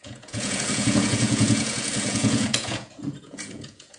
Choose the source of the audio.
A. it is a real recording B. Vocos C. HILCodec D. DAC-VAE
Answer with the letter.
B